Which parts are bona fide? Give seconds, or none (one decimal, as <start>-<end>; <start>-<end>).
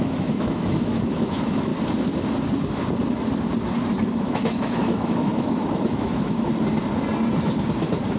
1.7-4.2; 6.5-8.2